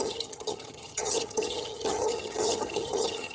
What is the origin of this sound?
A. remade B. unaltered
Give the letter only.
A